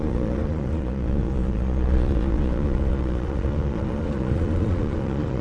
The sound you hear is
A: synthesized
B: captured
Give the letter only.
A